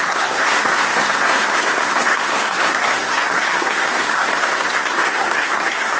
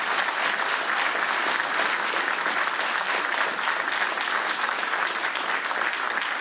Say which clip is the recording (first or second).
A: second